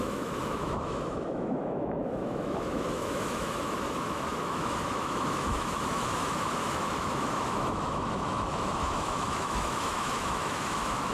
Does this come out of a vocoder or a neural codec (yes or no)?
yes